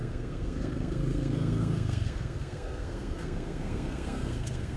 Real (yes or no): no